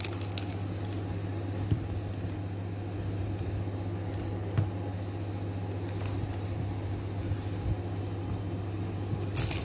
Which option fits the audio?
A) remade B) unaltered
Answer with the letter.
B